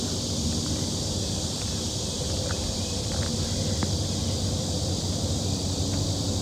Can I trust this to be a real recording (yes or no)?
yes